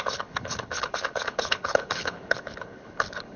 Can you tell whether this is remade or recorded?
remade